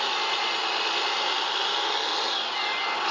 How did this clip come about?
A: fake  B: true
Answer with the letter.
B